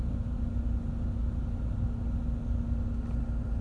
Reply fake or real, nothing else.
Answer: real